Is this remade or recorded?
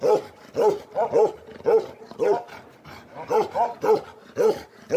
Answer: recorded